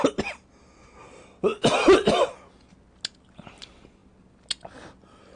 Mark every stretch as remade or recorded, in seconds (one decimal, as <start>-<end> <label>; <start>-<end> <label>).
0.0-5.4 recorded